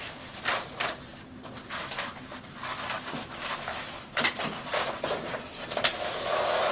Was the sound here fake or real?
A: real